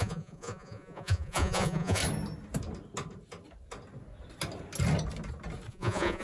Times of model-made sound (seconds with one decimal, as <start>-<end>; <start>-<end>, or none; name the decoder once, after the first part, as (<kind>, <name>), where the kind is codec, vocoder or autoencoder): 0.0-2.0 (vocoder, Vocos); 5.7-6.2